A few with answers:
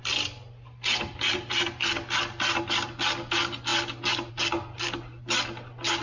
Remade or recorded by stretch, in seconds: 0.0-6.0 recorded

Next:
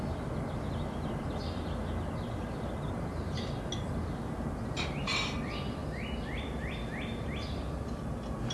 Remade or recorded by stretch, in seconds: 0.0-8.5 recorded

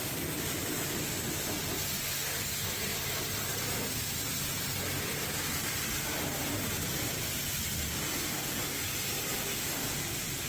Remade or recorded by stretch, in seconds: 0.0-10.5 recorded

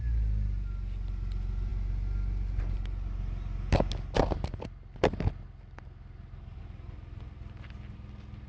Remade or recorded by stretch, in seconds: 0.0-8.5 recorded

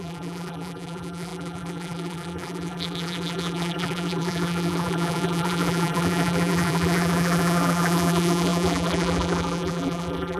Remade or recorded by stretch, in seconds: 0.0-10.4 remade

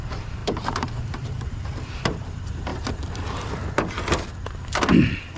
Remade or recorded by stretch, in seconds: 0.0-2.7 remade; 2.7-5.4 recorded